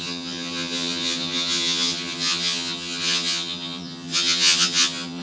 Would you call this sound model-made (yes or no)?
yes